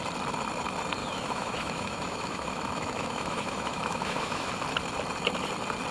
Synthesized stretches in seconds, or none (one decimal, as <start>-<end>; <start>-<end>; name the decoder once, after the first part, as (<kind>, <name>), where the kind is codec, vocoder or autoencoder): 1.0-4.5 (autoencoder, DAC-VAE)